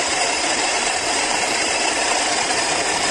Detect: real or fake fake